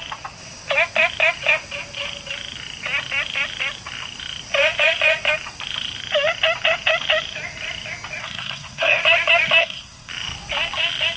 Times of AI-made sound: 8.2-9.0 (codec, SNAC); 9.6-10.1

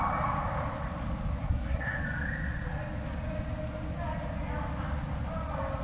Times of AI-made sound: 1.4-2.0 (codec, SNAC)